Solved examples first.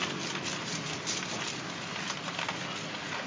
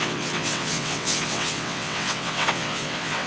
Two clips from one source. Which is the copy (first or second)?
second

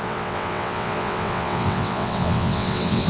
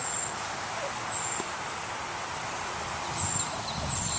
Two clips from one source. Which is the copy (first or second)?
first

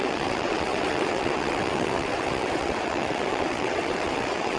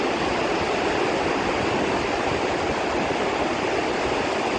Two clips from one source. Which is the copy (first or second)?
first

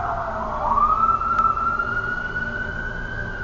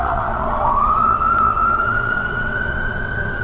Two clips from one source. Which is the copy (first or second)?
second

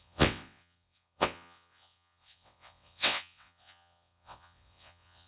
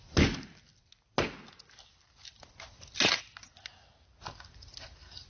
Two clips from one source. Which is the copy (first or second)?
first